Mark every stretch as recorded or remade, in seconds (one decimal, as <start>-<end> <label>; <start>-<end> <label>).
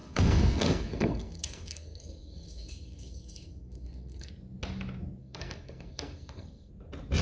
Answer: 0.0-4.3 remade; 4.3-5.2 recorded; 5.2-6.7 remade; 6.7-7.2 recorded